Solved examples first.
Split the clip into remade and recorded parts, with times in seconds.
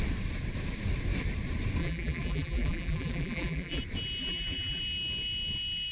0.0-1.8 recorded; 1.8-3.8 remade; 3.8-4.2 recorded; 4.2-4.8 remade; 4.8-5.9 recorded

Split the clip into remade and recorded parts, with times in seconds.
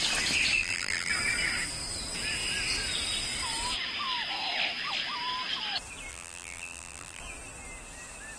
0.0-0.6 recorded; 0.6-1.1 remade; 1.1-6.1 recorded; 6.1-7.2 remade; 7.2-8.4 recorded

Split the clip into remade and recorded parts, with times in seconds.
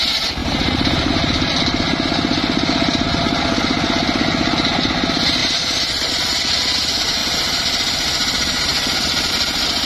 0.0-0.4 recorded; 0.4-1.1 remade; 1.1-5.4 recorded; 5.4-6.1 remade; 6.1-7.2 recorded; 7.2-9.3 remade; 9.3-9.9 recorded